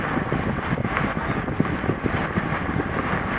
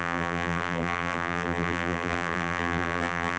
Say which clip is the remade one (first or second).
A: second